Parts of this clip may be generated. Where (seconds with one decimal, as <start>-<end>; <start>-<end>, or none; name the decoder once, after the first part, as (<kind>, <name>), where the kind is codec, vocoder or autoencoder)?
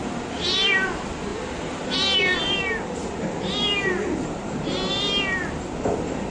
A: none